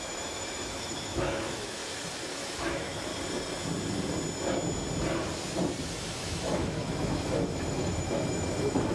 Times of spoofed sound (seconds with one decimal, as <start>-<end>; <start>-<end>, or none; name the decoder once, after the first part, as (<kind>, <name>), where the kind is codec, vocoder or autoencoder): 0.0-1.8 (autoencoder, DAC-VAE); 2.3-3.1; 6.0-8.9